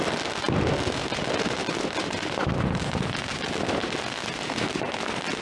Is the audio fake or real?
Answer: real